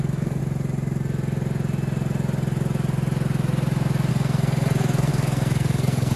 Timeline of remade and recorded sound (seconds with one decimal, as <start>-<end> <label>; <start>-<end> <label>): 0.0-0.4 remade; 0.4-4.1 recorded; 4.1-6.2 remade